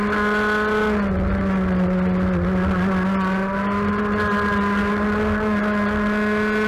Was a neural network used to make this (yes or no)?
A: no